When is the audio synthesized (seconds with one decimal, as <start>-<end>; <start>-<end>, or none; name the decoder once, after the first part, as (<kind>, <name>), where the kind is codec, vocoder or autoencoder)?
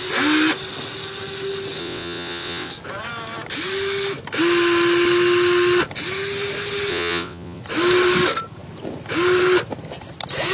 1.8-2.7 (vocoder, WaveNeXt); 6.9-7.6